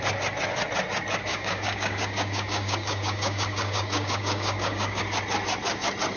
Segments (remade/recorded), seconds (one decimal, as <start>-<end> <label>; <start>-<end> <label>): 0.0-1.3 recorded; 1.3-5.0 remade; 5.0-6.2 recorded